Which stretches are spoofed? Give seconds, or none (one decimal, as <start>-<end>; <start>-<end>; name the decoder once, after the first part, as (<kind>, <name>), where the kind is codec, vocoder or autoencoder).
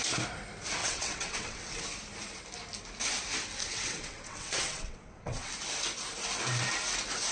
0.8-1.8 (vocoder, WaveNeXt); 3.6-5.5